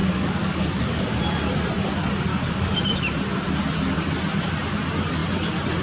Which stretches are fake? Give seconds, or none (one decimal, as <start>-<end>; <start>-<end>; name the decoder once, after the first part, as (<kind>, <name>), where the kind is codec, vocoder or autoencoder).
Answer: 0.0-1.1 (codec, DAC); 2.3-2.8